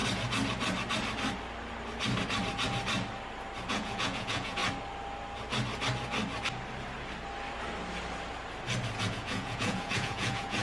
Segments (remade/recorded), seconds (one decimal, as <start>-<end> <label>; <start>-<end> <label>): 0.0-3.7 recorded; 3.7-4.6 remade; 4.6-9.1 recorded; 9.1-10.6 remade